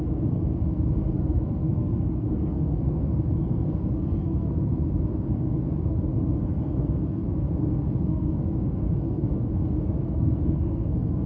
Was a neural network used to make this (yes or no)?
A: yes